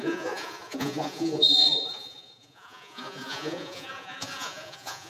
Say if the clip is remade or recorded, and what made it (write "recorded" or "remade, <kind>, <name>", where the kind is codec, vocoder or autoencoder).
remade, vocoder, Vocos